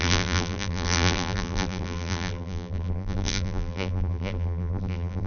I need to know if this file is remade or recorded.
remade